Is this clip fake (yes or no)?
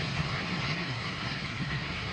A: yes